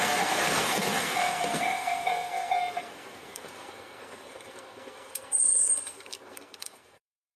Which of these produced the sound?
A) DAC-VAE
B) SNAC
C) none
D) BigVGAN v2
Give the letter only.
B